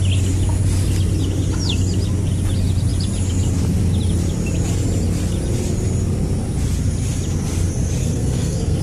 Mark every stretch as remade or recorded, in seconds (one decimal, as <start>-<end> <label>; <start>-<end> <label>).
0.0-8.0 recorded; 8.0-8.8 remade